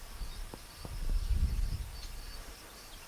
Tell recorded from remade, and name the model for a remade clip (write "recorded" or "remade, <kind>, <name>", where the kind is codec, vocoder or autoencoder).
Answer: recorded